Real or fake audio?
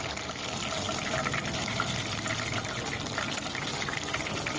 real